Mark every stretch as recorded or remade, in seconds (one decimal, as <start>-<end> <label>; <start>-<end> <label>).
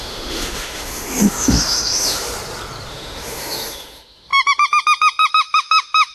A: 0.0-2.3 remade; 2.3-2.9 recorded; 2.9-4.3 remade; 4.3-5.3 recorded; 5.3-6.1 remade